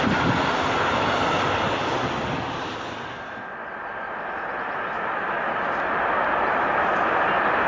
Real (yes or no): yes